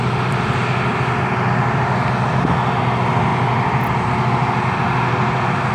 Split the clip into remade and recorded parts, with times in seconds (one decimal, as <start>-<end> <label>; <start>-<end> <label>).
0.0-5.7 recorded